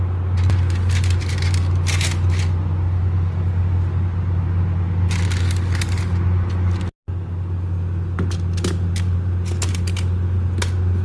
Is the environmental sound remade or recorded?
recorded